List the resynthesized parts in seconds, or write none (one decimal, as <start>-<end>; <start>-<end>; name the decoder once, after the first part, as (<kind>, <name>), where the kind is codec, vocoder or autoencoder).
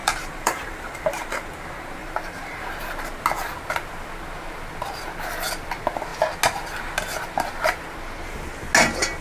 0.0-1.0 (vocoder, BigVGAN v2); 2.0-2.6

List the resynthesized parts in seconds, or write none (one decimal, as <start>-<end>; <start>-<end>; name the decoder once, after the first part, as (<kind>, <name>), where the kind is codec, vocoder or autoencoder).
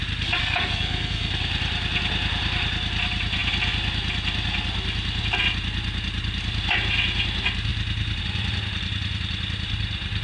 0.4-1.3 (codec, SNAC)